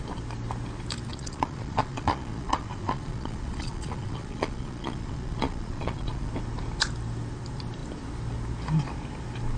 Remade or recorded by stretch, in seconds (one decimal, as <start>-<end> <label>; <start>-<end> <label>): 0.0-1.1 recorded; 1.1-6.3 remade; 6.3-9.6 recorded